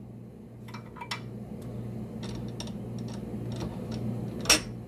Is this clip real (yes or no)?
yes